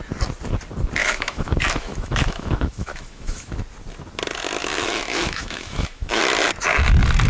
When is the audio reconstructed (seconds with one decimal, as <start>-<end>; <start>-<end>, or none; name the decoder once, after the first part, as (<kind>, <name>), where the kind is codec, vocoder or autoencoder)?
1.0-3.6 (autoencoder, DAC-VAE); 4.6-6.2